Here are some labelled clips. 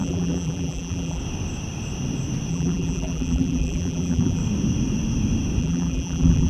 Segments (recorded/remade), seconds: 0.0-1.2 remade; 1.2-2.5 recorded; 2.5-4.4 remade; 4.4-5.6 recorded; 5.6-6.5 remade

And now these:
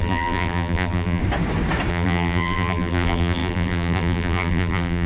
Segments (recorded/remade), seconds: 0.0-1.2 remade; 1.2-1.9 recorded; 1.9-5.1 remade

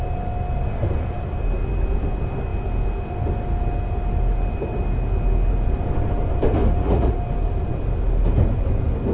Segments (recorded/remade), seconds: 0.0-6.6 recorded; 6.6-7.2 remade; 7.2-9.1 recorded

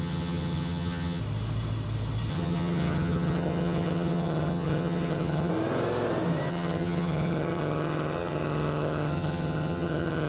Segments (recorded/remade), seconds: 0.0-1.2 remade; 1.2-2.3 recorded; 2.3-5.5 remade; 5.5-6.5 recorded; 6.5-10.3 remade

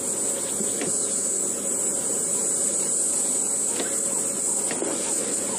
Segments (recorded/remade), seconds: 0.0-1.9 recorded; 1.9-3.3 remade; 3.3-5.6 recorded

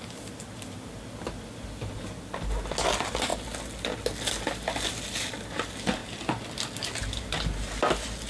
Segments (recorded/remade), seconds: 0.0-8.3 recorded